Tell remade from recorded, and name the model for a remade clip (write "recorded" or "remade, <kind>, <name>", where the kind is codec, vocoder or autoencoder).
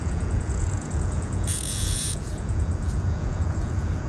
remade, vocoder, Vocos